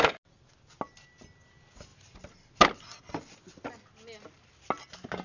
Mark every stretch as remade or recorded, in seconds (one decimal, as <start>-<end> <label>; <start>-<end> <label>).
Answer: 0.0-5.2 recorded